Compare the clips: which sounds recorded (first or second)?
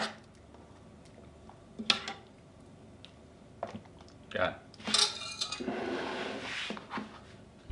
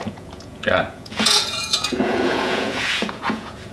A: first